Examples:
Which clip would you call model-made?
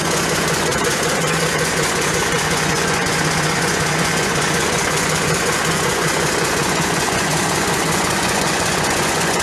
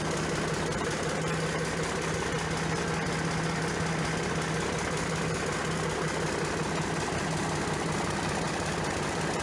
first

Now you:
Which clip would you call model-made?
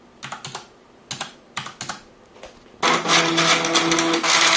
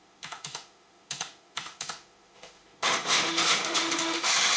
second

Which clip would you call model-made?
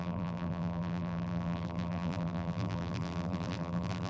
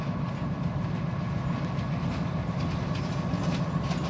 first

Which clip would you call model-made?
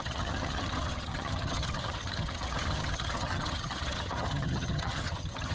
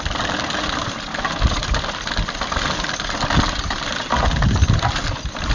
first